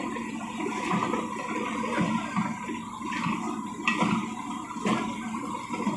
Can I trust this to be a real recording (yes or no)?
yes